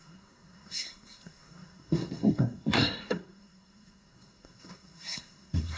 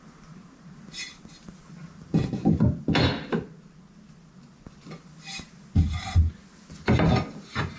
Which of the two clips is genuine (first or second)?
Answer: second